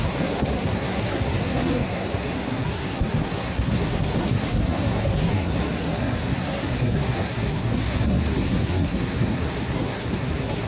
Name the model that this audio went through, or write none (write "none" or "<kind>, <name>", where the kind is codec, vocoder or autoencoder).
codec, SNAC